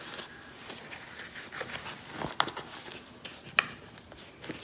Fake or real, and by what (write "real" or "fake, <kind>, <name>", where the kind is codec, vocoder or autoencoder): real